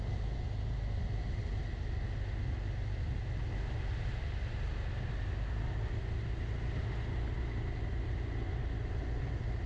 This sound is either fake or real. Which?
real